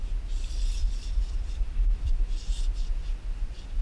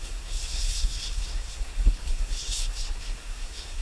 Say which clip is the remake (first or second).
second